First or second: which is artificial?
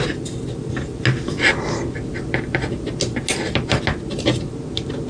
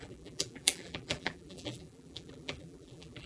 second